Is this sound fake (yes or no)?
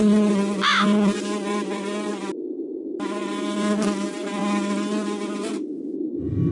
no